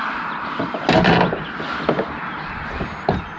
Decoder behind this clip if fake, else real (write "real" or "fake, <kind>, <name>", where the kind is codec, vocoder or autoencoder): real